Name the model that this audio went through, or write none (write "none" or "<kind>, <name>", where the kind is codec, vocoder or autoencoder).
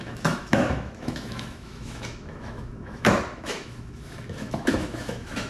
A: autoencoder, DAC-VAE